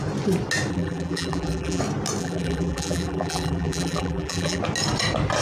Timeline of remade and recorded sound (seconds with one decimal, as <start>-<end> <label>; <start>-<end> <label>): 0.0-0.7 recorded; 0.7-1.8 remade; 1.8-2.2 recorded; 2.2-4.6 remade; 4.6-5.4 recorded